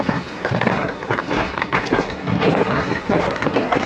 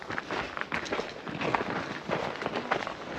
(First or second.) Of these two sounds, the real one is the second